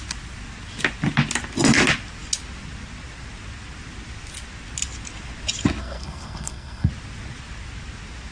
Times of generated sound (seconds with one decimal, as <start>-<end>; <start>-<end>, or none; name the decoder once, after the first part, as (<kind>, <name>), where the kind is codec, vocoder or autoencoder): 5.8-6.9 (codec, SNAC)